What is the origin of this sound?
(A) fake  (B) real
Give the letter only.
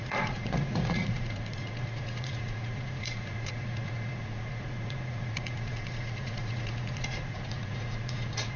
A